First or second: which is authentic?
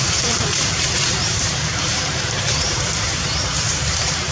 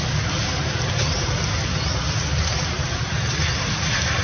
second